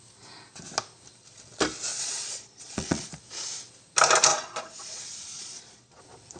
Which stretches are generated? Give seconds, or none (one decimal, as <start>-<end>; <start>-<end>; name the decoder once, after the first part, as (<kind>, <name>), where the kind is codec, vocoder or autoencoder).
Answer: 1.9-3.1 (vocoder, Vocos); 4.3-6.0